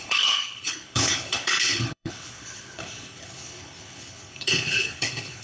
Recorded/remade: remade